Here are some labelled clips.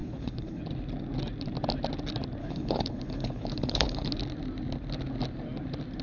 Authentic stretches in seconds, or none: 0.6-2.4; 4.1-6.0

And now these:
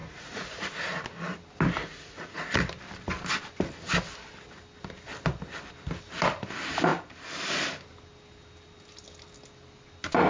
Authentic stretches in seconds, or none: 0.7-1.8; 2.5-10.3

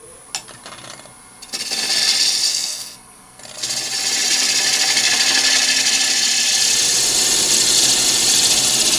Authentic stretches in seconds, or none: 0.0-2.5; 3.4-9.0